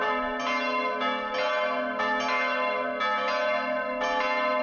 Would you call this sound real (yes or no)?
yes